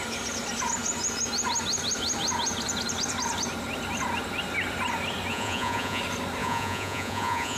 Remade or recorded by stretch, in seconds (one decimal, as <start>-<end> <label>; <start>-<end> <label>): 0.0-5.3 recorded; 5.3-6.0 remade; 6.0-6.4 recorded; 6.4-7.6 remade